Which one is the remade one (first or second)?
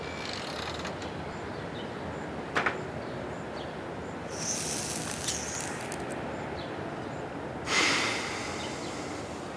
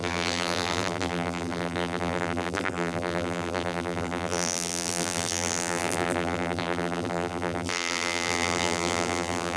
second